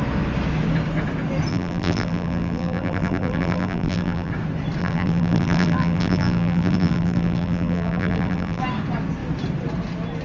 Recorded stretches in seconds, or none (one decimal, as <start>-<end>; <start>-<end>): 0.0-1.5; 4.3-4.8; 8.6-10.2